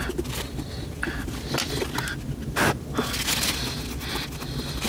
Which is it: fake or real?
real